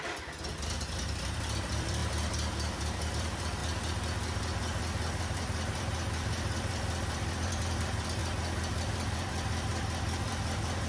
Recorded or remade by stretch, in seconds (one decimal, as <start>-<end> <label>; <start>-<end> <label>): 0.0-2.0 remade; 2.0-3.1 recorded; 3.1-3.6 remade; 3.6-5.2 recorded; 5.2-8.2 remade; 8.2-8.8 recorded; 8.8-10.9 remade